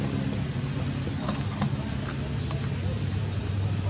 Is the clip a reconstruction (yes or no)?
no